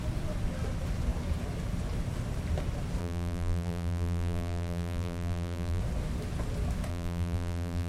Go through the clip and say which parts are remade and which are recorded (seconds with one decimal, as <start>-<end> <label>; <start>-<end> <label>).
0.0-3.0 recorded; 3.0-5.8 remade; 5.8-6.9 recorded; 6.9-7.9 remade